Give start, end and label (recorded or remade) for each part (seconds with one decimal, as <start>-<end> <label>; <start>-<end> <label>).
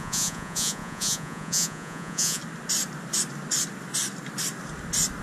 0.0-2.4 remade; 2.4-5.2 recorded